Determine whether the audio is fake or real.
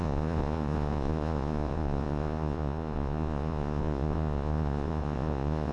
fake